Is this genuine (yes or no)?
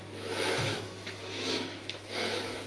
no